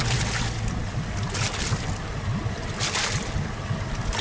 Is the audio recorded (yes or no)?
yes